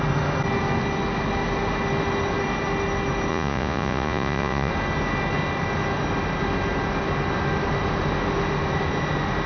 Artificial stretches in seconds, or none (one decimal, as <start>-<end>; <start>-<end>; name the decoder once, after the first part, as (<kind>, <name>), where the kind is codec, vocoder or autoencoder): 3.3-4.7 (vocoder, Vocos)